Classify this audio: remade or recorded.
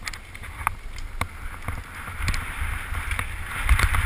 recorded